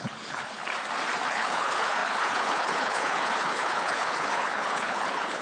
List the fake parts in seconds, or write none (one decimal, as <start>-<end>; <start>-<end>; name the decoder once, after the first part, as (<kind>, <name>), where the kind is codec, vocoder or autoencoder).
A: 0.0-0.6 (codec, HILCodec); 1.3-5.4